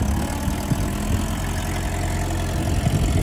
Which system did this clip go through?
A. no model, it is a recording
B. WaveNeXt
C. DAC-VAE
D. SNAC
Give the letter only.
A